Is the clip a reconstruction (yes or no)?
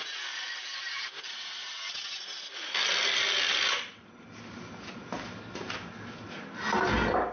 no